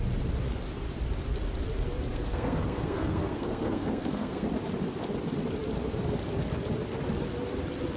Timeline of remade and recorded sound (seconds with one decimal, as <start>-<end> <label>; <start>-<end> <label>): 0.0-2.1 recorded; 2.1-4.5 remade; 4.5-8.0 recorded